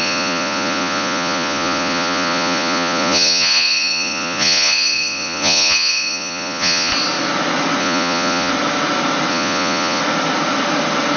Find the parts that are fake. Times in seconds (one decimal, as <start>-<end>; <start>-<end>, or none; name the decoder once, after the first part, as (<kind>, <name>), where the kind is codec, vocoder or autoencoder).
0.0-6.9 (vocoder, Vocos); 7.8-8.5; 9.3-10.0